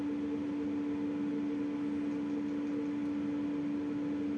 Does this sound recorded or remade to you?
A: recorded